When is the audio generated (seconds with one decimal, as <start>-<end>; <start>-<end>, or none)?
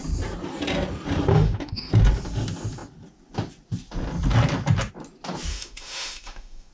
1.3-1.9; 5.5-6.7